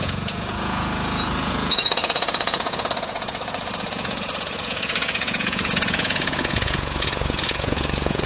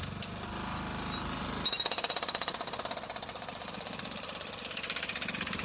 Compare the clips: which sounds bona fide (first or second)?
second